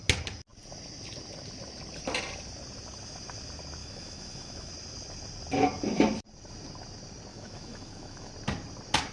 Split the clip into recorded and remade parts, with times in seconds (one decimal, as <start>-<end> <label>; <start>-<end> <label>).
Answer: 0.0-3.8 recorded; 3.8-4.7 remade; 4.7-7.3 recorded; 7.3-8.3 remade; 8.3-9.1 recorded

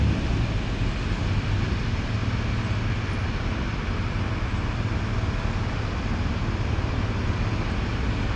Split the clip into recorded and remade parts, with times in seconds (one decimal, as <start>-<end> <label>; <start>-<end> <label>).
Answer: 0.0-8.4 recorded

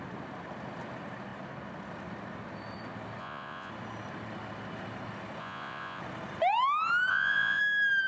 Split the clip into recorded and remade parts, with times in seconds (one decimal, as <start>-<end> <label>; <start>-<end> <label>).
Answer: 0.0-3.2 recorded; 3.2-3.7 remade; 3.7-5.4 recorded; 5.4-6.0 remade; 6.0-7.1 recorded; 7.1-7.6 remade; 7.6-8.1 recorded

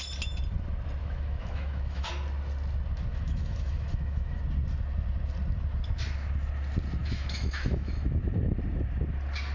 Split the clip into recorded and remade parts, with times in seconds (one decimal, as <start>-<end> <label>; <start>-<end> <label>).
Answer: 0.0-1.0 recorded; 1.0-2.1 remade; 2.1-3.1 recorded; 3.1-4.4 remade; 4.4-7.0 recorded; 7.0-8.3 remade; 8.3-9.5 recorded